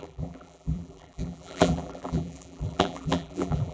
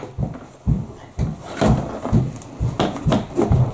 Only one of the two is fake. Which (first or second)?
first